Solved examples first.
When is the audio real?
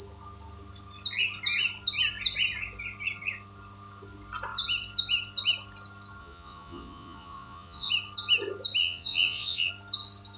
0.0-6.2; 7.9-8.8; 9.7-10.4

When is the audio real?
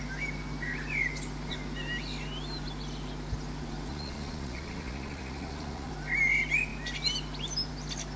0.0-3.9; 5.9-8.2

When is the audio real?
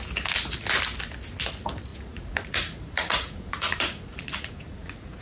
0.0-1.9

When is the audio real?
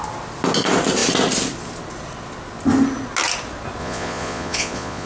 0.0-3.8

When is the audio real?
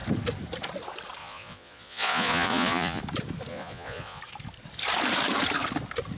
0.0-1.2; 3.0-3.5; 4.2-6.2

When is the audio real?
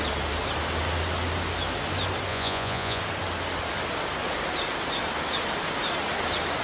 0.0-2.3; 3.0-6.6